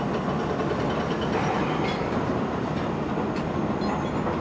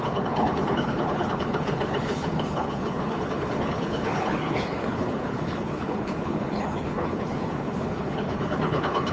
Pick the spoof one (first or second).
second